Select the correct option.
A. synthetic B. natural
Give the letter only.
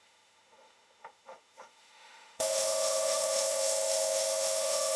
A